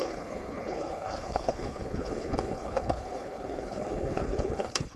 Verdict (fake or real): fake